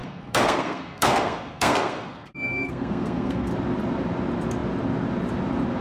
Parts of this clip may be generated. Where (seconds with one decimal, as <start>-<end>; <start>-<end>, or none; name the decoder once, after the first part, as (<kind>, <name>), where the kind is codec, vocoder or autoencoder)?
0.0-3.5 (codec, SNAC)